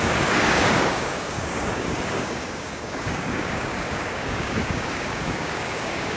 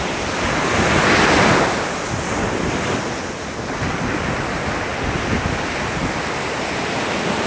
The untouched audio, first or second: second